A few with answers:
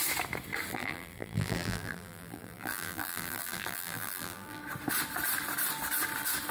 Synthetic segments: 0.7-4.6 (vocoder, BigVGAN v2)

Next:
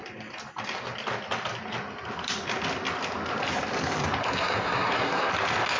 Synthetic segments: 4.2-5.3 (codec, SNAC)

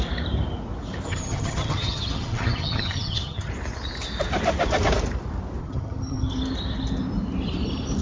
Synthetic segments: 1.1-3.5 (vocoder, HiFi-GAN); 5.6-6.3

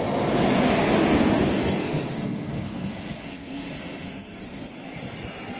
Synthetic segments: 1.8-4.7 (codec, SNAC)

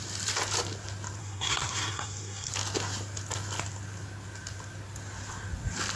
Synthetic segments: 1.2-2.5 (codec, SNAC)

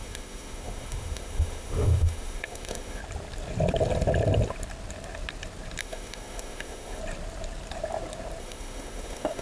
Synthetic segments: 0.0-3.0 (autoencoder, DAC-VAE); 5.8-7.0; 8.4-9.4

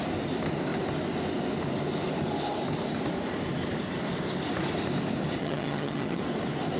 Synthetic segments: 5.4-6.2 (vocoder, HiFi-GAN)